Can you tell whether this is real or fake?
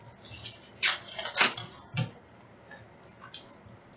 real